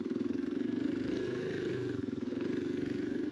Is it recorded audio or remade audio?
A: remade